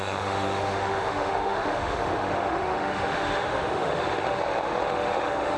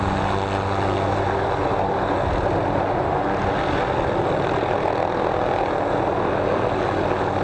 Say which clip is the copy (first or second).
first